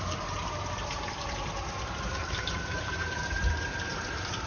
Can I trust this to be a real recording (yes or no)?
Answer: no